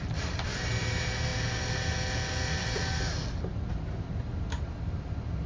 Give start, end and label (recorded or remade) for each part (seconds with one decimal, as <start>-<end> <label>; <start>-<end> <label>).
0.0-5.5 recorded